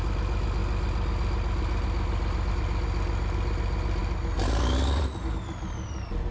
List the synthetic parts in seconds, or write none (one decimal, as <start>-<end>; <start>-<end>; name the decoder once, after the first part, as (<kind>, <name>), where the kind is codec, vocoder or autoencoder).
none